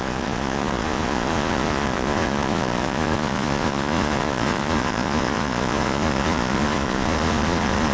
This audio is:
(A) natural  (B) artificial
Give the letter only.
B